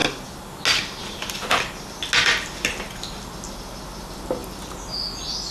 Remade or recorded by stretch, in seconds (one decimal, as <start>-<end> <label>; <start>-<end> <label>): 0.0-5.5 recorded

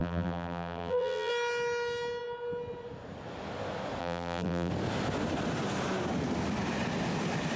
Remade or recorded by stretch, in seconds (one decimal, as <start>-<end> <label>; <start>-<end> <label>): 0.0-1.3 remade; 1.3-4.0 recorded; 4.0-4.7 remade; 4.7-7.6 recorded

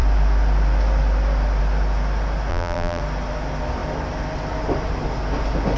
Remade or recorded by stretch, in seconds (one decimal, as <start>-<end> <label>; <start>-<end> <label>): 0.0-2.5 recorded; 2.5-3.0 remade; 3.0-5.8 recorded

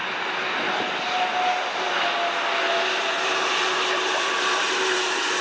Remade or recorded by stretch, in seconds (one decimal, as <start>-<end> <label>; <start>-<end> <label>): 0.0-3.0 recorded; 3.0-5.4 remade